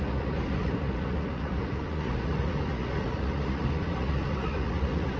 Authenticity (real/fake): fake